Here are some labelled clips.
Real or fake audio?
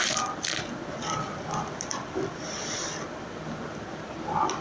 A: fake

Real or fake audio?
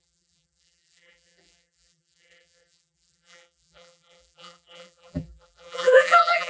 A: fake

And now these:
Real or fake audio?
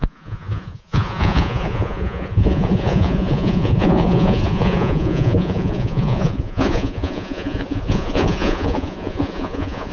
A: fake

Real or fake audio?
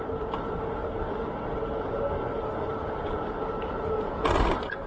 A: real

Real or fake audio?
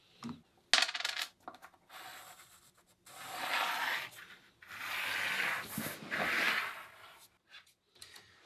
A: real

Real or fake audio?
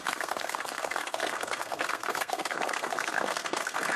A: fake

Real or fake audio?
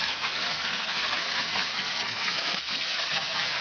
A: fake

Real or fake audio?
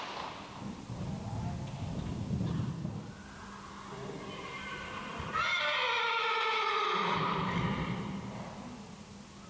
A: real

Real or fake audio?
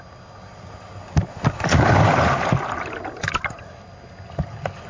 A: real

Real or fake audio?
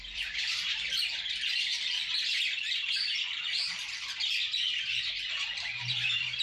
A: fake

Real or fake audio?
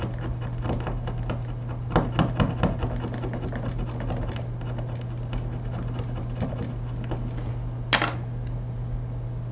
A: real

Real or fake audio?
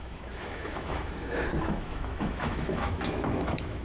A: fake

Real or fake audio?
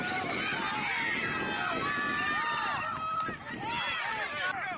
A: real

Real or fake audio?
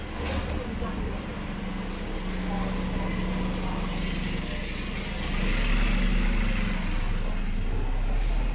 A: real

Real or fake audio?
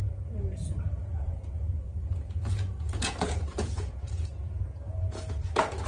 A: fake